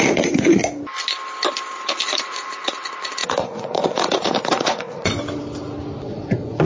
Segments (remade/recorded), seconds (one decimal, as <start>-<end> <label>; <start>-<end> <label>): 0.0-0.6 remade; 0.6-1.8 recorded; 1.8-5.2 remade; 5.2-6.0 recorded; 6.0-6.7 remade